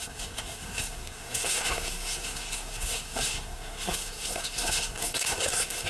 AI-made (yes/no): yes